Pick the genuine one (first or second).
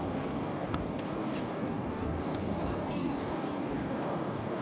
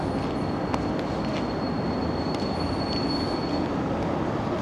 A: second